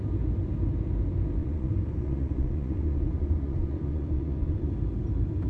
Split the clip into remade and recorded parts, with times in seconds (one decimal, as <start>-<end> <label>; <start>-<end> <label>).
0.0-1.4 recorded; 1.4-4.7 remade; 4.7-5.5 recorded